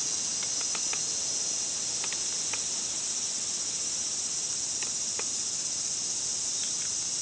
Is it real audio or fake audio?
real